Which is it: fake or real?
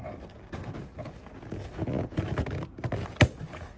real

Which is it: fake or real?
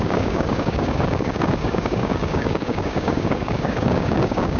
fake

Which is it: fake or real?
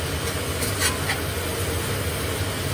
real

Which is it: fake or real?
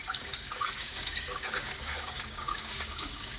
fake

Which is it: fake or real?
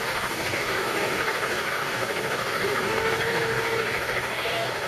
fake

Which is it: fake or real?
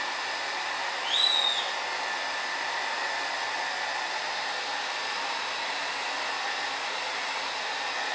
real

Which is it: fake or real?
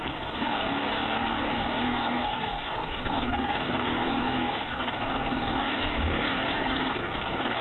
fake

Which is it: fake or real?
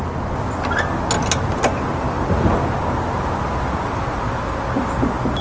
real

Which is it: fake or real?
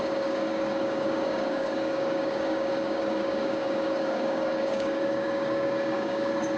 fake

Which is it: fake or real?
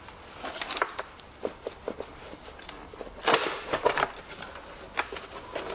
real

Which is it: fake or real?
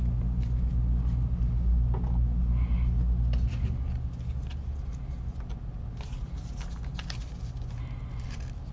real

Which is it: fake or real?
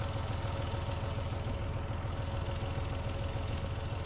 real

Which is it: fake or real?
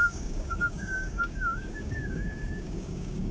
fake